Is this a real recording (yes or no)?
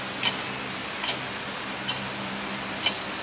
yes